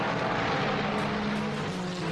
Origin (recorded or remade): recorded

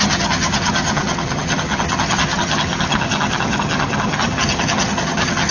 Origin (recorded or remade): remade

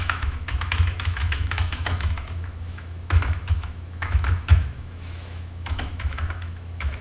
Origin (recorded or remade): remade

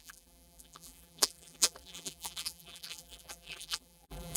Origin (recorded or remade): remade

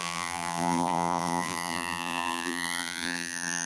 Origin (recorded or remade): remade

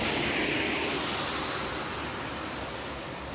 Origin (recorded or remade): recorded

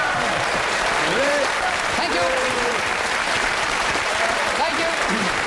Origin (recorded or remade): remade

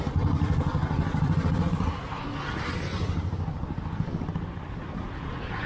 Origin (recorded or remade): recorded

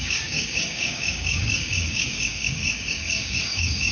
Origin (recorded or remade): remade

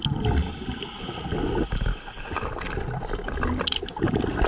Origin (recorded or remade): recorded